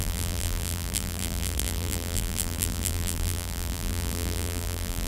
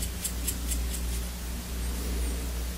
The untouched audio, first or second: second